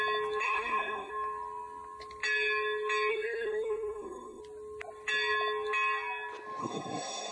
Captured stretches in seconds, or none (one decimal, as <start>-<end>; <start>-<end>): 0.0-0.4; 1.1-3.1; 4.4-6.6